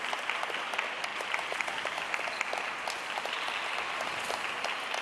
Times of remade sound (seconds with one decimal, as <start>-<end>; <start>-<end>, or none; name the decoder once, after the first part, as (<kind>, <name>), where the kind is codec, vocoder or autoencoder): none